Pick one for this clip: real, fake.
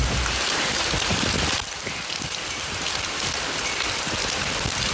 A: real